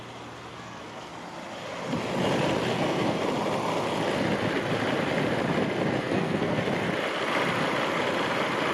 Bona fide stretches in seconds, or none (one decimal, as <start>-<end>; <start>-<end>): 0.0-0.5; 1.1-2.7; 3.2-6.0; 6.6-8.7